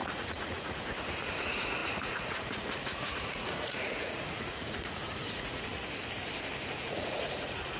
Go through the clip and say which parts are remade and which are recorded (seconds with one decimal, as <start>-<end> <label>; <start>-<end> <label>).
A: 0.0-5.7 remade; 5.7-6.8 recorded; 6.8-7.8 remade